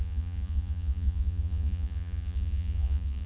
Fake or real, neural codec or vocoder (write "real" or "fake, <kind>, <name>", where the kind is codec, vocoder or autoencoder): fake, vocoder, Vocos